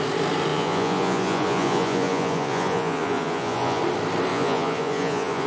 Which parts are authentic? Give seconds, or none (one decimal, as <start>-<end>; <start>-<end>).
0.0-0.5; 3.8-4.3